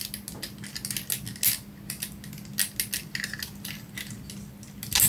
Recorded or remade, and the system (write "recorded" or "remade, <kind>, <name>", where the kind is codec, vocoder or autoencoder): recorded